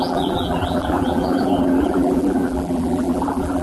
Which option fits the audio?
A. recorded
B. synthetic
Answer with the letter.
B